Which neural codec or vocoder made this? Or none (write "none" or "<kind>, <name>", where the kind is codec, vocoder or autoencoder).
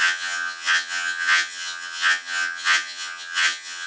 vocoder, HiFi-GAN